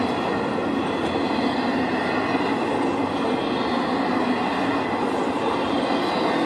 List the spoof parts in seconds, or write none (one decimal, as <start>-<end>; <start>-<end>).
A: none